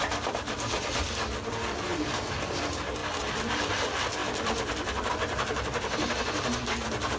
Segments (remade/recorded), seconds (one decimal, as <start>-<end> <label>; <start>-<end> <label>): 0.0-1.9 recorded; 1.9-2.6 remade; 2.6-3.0 recorded; 3.0-3.7 remade; 3.7-7.2 recorded